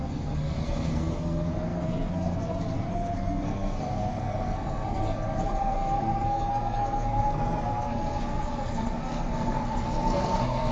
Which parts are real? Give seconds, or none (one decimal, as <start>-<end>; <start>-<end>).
none